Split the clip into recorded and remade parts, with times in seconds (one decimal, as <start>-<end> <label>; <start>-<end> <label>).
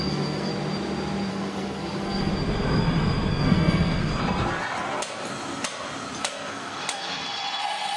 0.0-0.5 remade; 0.5-1.3 recorded; 1.3-2.3 remade; 2.3-3.3 recorded; 3.3-4.1 remade; 4.1-6.2 recorded; 6.2-7.2 remade; 7.2-8.0 recorded